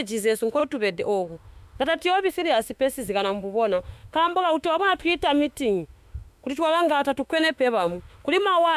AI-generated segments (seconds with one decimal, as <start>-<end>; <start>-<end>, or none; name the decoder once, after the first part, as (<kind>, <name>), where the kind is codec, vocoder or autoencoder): 0.0-8.8 (autoencoder, DAC-VAE)